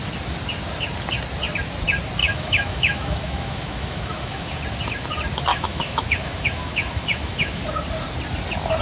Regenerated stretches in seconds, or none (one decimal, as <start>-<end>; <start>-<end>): 2.2-4.6; 5.5-7.6